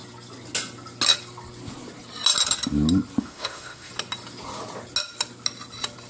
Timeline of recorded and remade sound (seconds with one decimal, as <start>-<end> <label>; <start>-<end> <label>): 0.0-3.2 recorded; 3.2-3.9 remade; 3.9-6.1 recorded

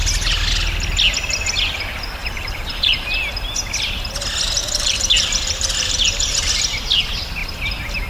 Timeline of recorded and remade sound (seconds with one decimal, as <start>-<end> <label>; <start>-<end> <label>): 0.0-2.2 recorded; 2.2-3.1 remade; 3.1-4.6 recorded; 4.6-6.5 remade; 6.5-8.1 recorded

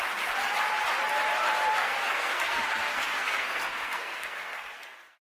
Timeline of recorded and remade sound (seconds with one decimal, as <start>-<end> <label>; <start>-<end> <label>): 0.0-1.8 recorded; 1.8-5.3 remade

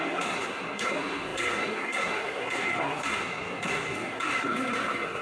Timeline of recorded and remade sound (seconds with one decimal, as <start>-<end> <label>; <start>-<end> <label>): 0.0-5.2 remade

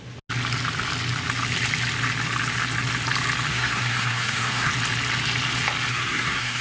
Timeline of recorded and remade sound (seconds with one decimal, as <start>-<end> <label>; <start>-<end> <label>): 0.0-3.5 recorded; 3.5-4.7 remade; 4.7-5.9 recorded; 5.9-6.6 remade